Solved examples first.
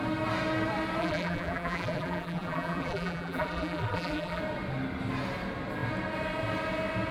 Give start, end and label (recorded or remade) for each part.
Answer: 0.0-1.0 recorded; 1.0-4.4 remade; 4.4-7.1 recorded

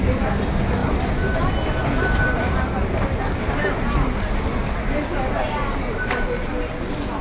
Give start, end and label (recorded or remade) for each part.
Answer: 0.0-7.2 recorded

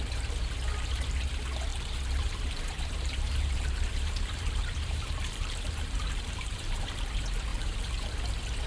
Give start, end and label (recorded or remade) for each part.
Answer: 0.0-1.7 recorded; 1.7-6.9 remade; 6.9-7.5 recorded; 7.5-8.1 remade; 8.1-8.7 recorded

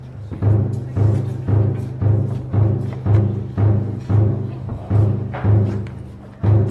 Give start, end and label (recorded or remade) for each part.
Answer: 0.0-6.7 recorded

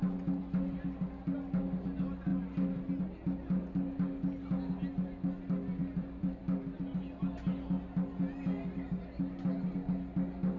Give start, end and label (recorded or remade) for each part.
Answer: 0.0-5.8 recorded; 5.8-6.4 remade; 6.4-10.6 recorded

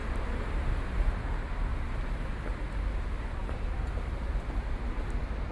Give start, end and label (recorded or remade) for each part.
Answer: 0.0-0.7 remade; 0.7-1.7 recorded; 1.7-2.3 remade; 2.3-3.4 recorded; 3.4-4.3 remade; 4.3-5.5 recorded